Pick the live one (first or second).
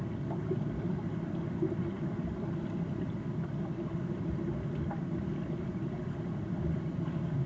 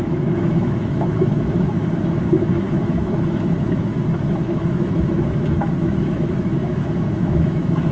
first